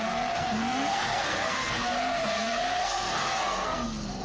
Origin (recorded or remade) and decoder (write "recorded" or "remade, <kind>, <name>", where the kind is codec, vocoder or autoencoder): remade, codec, SNAC